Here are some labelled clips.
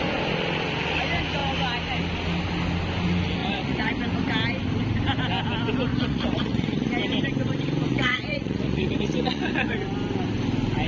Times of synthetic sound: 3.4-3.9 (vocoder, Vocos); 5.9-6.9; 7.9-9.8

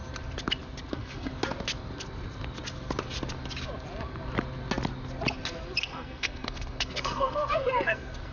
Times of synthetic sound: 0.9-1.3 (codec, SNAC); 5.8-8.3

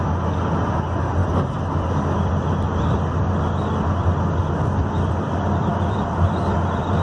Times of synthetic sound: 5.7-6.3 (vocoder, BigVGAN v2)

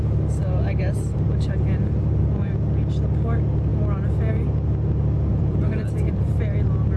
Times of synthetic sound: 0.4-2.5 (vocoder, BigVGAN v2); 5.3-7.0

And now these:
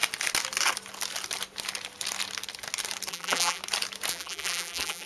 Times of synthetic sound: 3.1-3.6 (vocoder, BigVGAN v2); 4.1-5.1

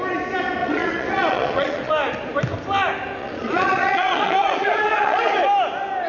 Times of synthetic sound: 0.6-1.9 (vocoder, Vocos); 3.2-5.3

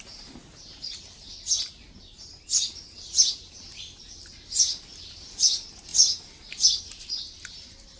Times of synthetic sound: none

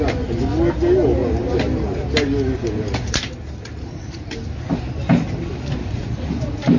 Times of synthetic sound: 5.8-6.3 (vocoder, Vocos)